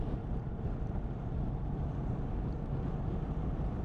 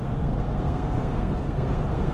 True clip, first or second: first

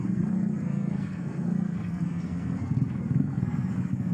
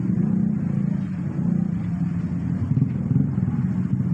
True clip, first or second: second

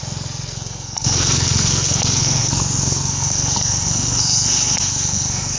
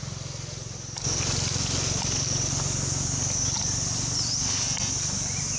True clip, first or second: second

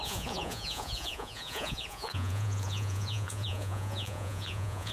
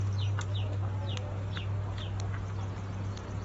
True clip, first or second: second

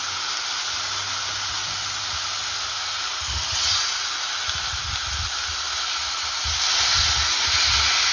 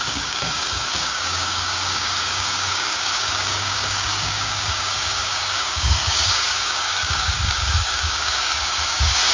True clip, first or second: first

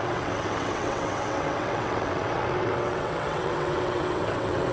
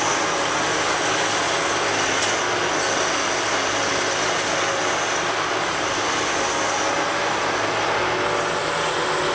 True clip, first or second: second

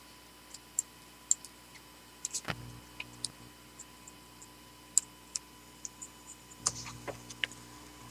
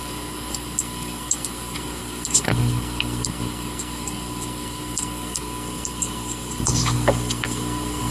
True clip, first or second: first